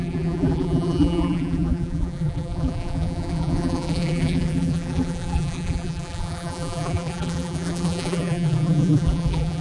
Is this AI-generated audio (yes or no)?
yes